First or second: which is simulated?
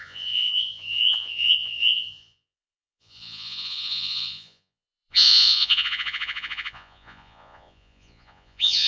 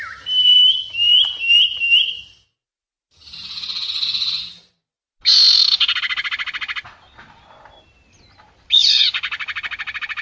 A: first